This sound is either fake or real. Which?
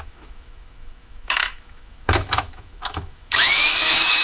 fake